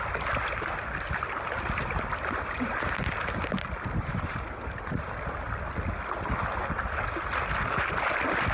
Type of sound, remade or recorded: recorded